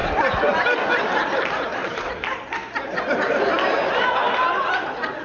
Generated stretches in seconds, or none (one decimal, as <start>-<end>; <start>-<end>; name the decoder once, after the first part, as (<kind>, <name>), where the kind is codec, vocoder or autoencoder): 0.0-2.6 (vocoder, BigVGAN v2); 3.1-4.2